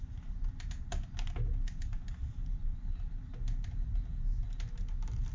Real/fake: real